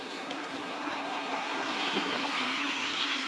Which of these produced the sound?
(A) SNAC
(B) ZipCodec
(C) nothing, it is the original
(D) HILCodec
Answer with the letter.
A